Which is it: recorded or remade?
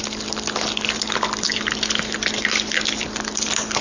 recorded